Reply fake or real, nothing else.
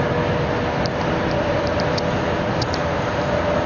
real